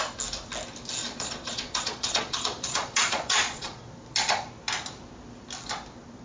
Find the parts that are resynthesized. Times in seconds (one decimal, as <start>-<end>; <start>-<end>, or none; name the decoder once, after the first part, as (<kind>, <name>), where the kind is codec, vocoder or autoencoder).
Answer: 1.0-3.8 (vocoder, Vocos)